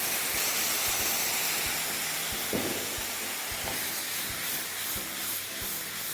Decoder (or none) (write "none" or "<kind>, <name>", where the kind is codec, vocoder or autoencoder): none